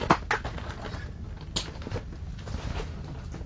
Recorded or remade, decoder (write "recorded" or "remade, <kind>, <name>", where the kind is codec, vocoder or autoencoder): recorded